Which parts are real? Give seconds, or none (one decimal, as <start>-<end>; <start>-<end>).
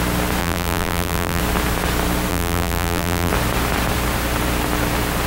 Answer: 0.0-0.4; 1.4-2.3; 3.3-5.3